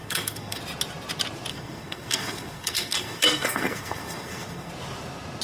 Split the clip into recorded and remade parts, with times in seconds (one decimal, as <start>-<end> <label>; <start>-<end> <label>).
0.0-0.6 remade; 0.6-1.5 recorded; 1.5-4.7 remade; 4.7-5.4 recorded